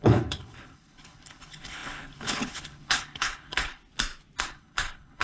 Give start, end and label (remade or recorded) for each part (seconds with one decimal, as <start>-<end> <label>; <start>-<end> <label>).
0.0-3.8 remade; 3.8-4.4 recorded; 4.4-5.2 remade